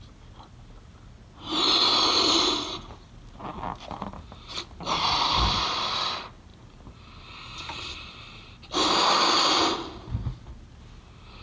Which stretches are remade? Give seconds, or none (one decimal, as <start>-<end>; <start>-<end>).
none